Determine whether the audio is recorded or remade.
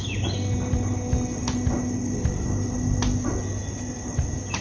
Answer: recorded